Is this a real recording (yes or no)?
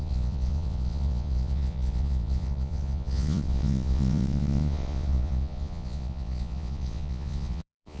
no